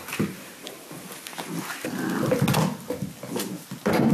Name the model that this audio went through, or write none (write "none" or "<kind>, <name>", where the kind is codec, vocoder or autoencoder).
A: none